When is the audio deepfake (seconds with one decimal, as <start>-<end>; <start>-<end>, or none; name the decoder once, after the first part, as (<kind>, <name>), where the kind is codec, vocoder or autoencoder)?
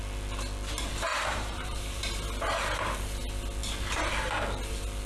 1.1-2.0 (vocoder, BigVGAN v2)